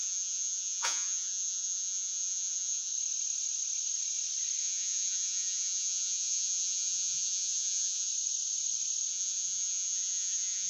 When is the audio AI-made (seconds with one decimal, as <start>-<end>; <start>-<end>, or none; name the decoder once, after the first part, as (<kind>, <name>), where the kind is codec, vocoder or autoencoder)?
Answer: 0.0-2.9 (vocoder, Vocos); 4.6-8.1; 9.1-10.7